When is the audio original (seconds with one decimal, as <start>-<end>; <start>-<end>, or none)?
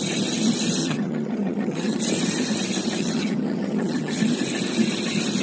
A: 0.0-0.8; 2.0-3.0; 4.2-5.4